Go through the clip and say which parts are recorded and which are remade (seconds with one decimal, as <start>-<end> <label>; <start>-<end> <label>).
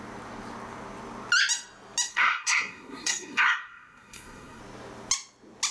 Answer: 0.0-2.1 recorded; 2.1-4.6 remade; 4.6-5.7 recorded